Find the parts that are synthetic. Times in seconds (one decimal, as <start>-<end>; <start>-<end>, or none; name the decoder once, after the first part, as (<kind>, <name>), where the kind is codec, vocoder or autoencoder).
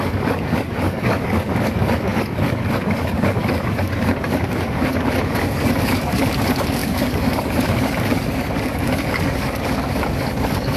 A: 0.0-10.8 (codec, DAC)